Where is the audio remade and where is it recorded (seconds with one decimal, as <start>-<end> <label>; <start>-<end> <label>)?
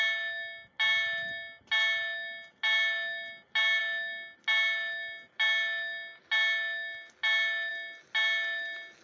0.0-9.0 recorded